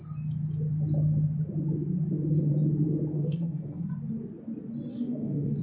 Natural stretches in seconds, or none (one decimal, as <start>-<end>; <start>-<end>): 0.0-3.1; 3.9-4.9